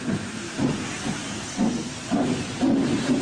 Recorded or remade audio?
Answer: recorded